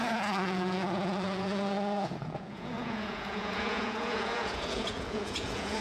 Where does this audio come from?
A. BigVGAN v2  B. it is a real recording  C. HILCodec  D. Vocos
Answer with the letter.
D